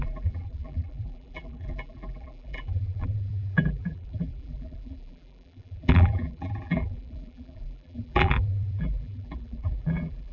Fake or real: fake